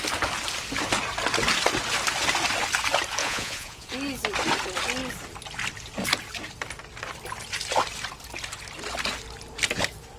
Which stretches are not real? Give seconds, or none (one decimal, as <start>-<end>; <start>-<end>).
3.2-3.9